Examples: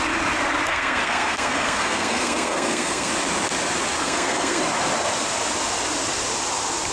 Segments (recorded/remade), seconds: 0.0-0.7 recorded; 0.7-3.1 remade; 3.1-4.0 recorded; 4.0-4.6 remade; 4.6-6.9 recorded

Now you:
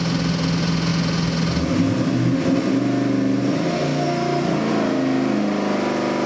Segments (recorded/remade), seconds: 0.0-6.3 recorded

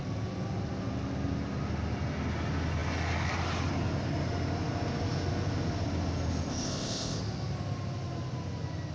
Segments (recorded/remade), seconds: 0.0-6.5 recorded; 6.5-7.2 remade; 7.2-8.9 recorded

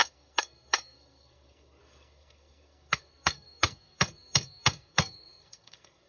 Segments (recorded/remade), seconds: 0.0-6.1 remade

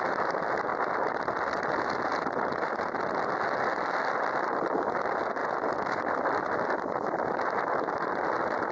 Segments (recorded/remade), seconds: 0.0-8.7 recorded

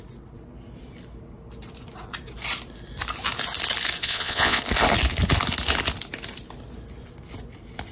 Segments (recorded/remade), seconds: 0.0-4.0 recorded; 4.0-4.6 remade; 4.6-7.9 recorded

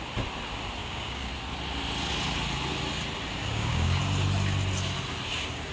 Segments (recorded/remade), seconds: 0.0-0.8 recorded; 0.8-1.3 remade; 1.3-3.4 recorded; 3.4-4.0 remade; 4.0-5.7 recorded